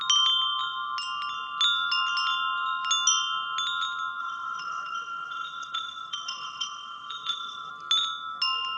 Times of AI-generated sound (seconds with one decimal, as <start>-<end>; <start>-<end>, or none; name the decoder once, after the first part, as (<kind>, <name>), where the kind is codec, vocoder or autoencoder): 4.2-7.7 (vocoder, WaveNeXt)